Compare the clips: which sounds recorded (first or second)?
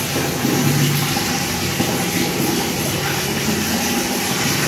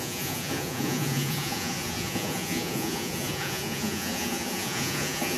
first